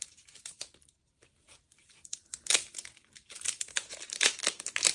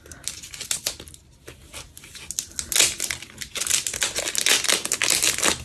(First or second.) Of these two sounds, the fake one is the first